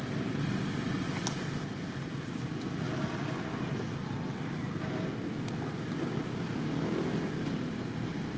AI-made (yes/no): no